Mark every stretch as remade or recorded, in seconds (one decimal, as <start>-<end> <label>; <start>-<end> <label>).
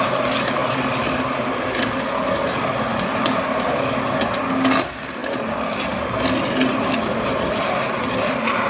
0.0-8.7 recorded